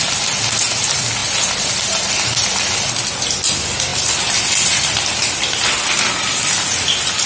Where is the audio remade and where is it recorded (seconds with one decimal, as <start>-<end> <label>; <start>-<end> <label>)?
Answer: 0.0-3.9 recorded; 3.9-5.0 remade; 5.0-7.3 recorded